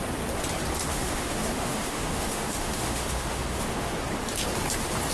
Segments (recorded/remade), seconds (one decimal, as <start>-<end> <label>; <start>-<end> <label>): 0.0-0.8 recorded; 0.8-3.9 remade; 3.9-5.1 recorded